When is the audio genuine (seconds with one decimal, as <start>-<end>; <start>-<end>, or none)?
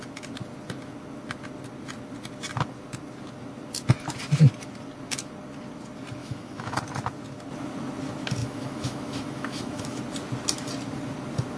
0.0-6.2; 6.8-8.4; 10.0-11.6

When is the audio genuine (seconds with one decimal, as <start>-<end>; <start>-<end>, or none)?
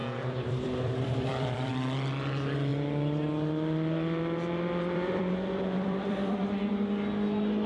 1.7-2.7; 6.7-7.7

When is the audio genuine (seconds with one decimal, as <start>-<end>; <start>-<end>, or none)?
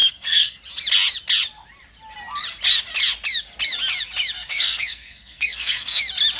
0.6-4.5; 6.0-6.4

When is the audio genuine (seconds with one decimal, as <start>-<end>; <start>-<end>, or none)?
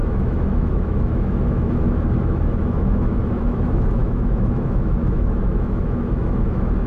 none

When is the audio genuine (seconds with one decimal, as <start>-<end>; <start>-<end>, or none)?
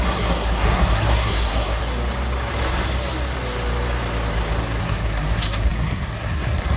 1.8-4.8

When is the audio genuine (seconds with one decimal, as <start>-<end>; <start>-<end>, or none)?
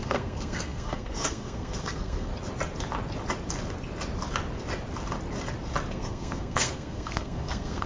2.3-5.9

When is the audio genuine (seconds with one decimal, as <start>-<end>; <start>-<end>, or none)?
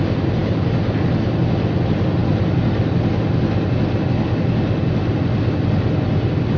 0.0-6.6